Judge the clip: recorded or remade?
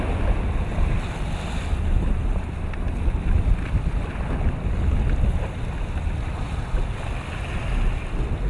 recorded